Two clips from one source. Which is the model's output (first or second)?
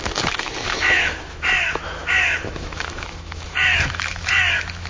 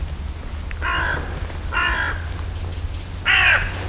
first